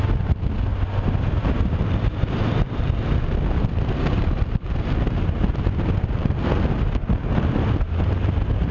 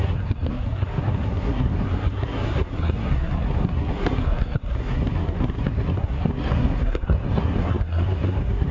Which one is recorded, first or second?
first